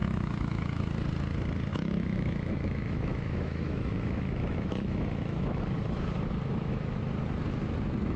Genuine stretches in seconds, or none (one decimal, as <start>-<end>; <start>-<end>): 0.8-1.7; 5.6-6.5; 7.0-8.2